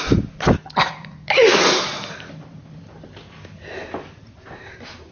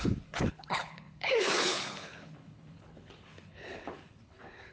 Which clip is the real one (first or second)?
first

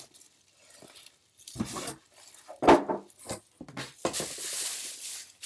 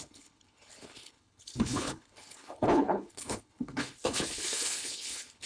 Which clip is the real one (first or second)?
first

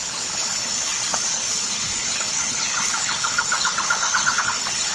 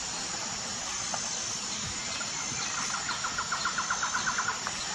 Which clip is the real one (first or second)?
second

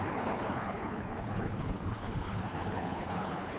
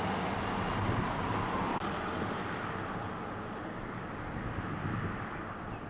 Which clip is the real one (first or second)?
second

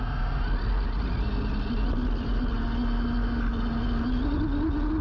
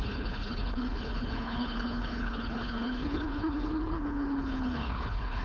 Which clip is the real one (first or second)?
first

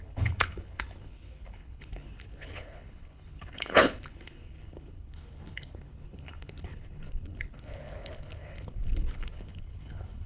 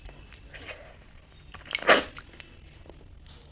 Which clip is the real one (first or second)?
second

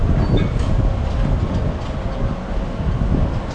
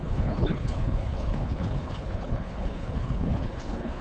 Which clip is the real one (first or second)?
first